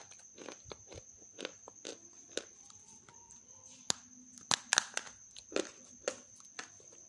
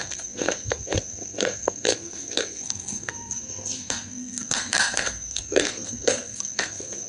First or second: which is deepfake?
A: second